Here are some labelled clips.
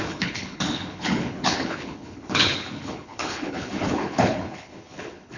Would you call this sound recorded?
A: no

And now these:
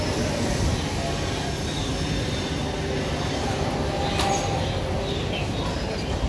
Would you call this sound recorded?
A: yes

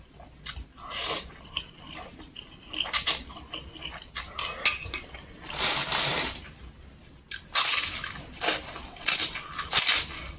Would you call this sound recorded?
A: yes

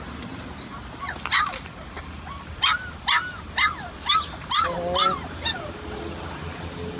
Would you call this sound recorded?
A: yes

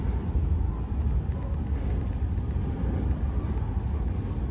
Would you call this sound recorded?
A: yes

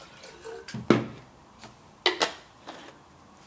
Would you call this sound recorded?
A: yes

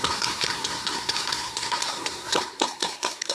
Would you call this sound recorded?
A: no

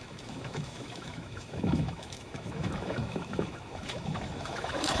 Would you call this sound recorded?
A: no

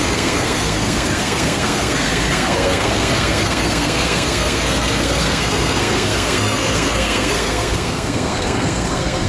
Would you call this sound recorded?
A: no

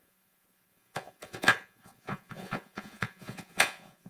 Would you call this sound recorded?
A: no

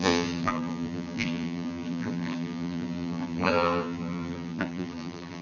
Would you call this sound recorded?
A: no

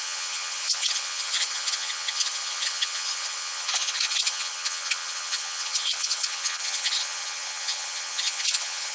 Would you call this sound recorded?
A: no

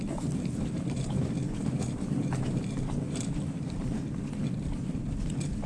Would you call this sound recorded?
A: yes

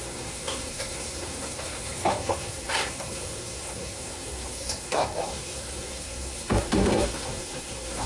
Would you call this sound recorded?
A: no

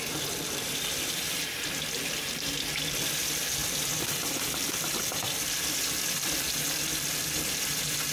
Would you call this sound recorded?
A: no